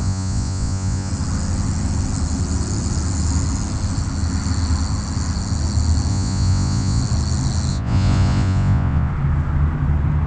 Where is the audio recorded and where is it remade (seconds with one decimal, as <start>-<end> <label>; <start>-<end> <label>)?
0.0-1.1 remade; 1.1-6.1 recorded; 6.1-7.0 remade; 7.0-7.7 recorded; 7.7-9.1 remade; 9.1-10.3 recorded